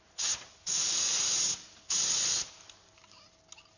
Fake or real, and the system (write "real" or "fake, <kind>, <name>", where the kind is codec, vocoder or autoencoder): real